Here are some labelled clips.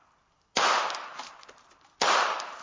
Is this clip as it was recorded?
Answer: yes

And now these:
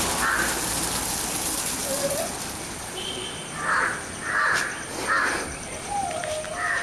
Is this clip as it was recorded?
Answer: yes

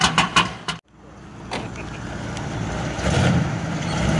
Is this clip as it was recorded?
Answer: yes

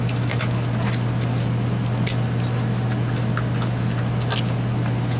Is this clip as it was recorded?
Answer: yes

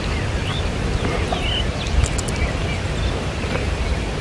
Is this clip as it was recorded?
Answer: yes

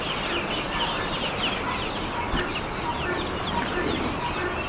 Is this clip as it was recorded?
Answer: yes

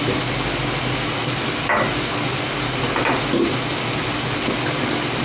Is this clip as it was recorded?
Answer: yes